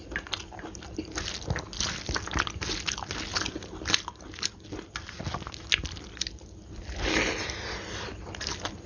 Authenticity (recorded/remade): recorded